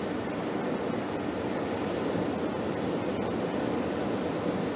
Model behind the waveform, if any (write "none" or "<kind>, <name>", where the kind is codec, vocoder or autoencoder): none